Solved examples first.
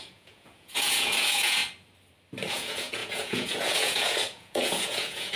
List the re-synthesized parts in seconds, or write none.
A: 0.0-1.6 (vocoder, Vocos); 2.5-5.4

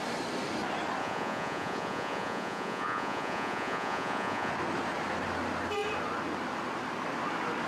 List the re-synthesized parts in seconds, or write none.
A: 1.0-4.5 (vocoder, Vocos)

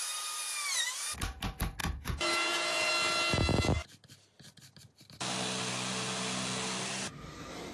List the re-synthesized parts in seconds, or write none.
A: 1.8-2.9 (vocoder, Vocos)